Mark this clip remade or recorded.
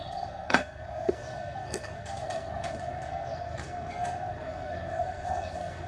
remade